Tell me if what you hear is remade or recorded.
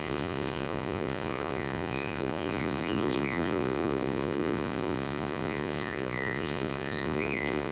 remade